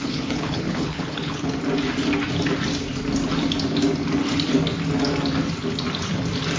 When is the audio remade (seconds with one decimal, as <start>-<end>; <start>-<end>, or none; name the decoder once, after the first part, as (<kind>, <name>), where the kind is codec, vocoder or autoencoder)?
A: 0.0-1.5 (codec, HILCodec)